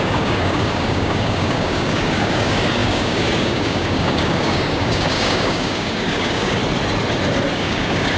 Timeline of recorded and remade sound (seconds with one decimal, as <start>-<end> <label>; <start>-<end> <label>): 0.0-6.6 remade; 6.6-7.5 recorded; 7.5-8.2 remade